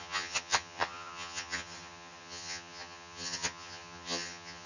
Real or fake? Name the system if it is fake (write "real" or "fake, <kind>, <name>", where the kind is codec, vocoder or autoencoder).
fake, vocoder, HiFi-GAN